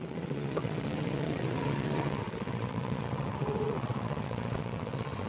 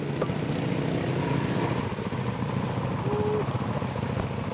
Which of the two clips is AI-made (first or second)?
first